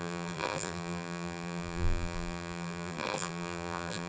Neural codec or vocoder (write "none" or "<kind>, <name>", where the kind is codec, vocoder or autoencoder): vocoder, BigVGAN v2